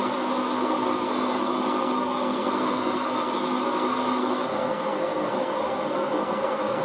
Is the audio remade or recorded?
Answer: remade